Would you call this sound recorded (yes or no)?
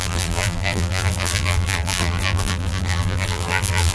no